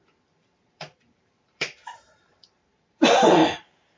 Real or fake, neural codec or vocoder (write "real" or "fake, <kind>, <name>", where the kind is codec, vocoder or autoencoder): fake, vocoder, BigVGAN v2